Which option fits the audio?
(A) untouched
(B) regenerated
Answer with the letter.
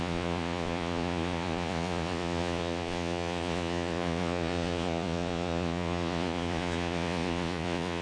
B